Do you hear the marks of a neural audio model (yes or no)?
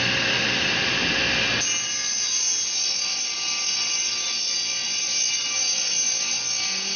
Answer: no